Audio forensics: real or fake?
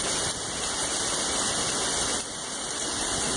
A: real